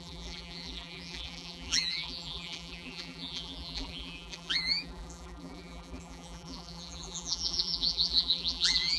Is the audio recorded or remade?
remade